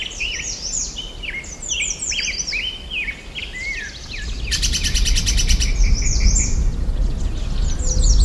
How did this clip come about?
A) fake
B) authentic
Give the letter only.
B